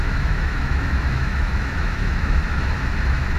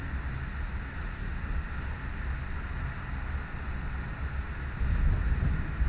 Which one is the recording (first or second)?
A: second